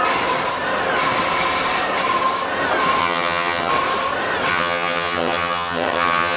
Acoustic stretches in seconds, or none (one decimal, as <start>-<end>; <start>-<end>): 0.0-3.0; 3.7-4.5